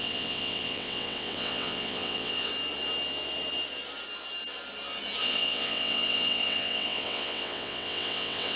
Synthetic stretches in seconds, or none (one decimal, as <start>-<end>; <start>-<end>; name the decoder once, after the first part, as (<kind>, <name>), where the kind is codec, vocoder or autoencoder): 0.0-2.5 (vocoder, WaveNeXt); 5.2-8.6